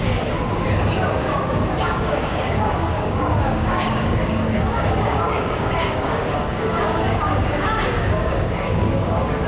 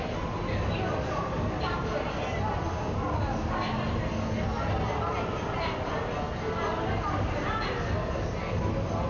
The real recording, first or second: second